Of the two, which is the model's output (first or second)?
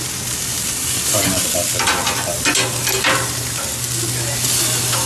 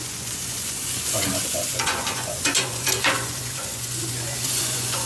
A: second